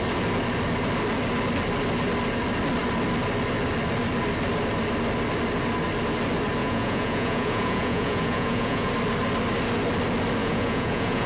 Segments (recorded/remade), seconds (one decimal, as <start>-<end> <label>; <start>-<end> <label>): 0.0-6.6 recorded; 6.6-8.9 remade; 8.9-10.4 recorded; 10.4-11.3 remade